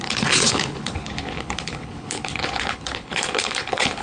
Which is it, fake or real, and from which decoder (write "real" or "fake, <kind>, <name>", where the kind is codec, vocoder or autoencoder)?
fake, codec, HILCodec